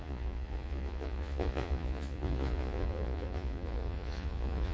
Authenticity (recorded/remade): remade